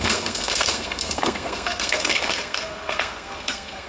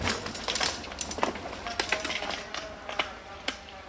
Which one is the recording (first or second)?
second